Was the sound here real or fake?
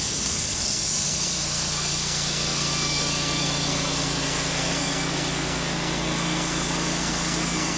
fake